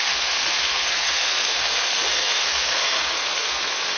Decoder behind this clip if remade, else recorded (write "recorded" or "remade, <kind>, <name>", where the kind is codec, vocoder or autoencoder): remade, codec, SNAC